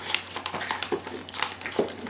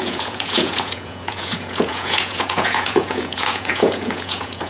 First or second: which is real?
first